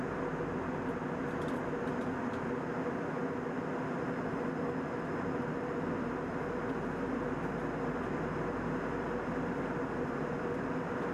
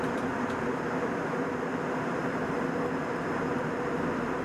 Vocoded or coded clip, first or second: second